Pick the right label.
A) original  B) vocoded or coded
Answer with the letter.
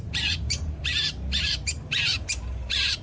B